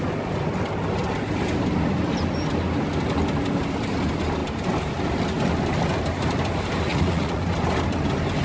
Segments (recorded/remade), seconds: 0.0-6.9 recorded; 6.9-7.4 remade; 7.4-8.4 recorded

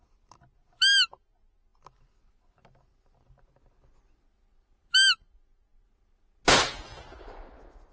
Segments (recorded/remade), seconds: 0.0-7.9 recorded

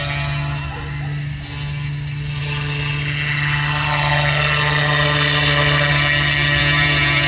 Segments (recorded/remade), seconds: 0.0-6.6 recorded; 6.6-7.3 remade

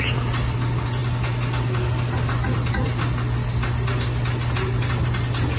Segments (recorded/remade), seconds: 0.0-5.6 recorded

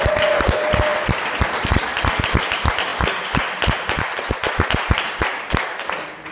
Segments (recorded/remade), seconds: 0.0-6.3 recorded